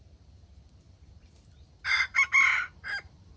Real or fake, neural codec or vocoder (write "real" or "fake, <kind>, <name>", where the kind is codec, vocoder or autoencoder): real